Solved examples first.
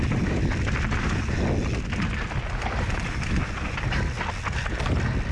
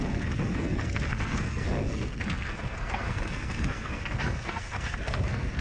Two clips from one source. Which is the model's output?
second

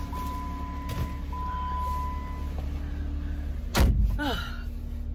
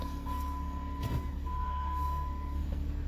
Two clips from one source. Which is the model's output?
second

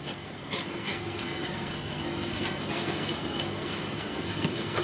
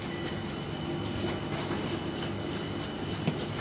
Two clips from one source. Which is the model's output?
first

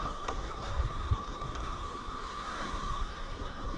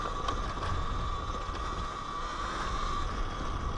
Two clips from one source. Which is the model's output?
first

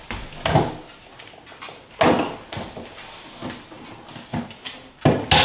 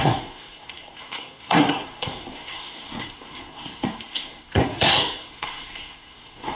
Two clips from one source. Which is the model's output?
second